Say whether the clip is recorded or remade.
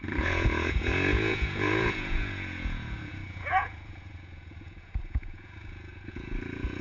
remade